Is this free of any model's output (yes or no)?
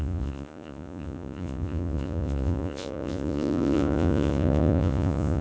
no